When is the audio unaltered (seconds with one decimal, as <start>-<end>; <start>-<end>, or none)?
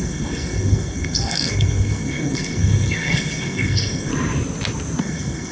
4.1-5.0